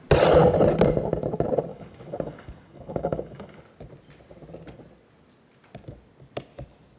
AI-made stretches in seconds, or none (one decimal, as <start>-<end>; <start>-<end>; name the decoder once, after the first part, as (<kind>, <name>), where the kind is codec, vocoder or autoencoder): 1.7-3.6 (codec, DAC)